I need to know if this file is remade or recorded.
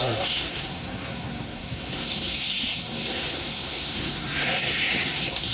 remade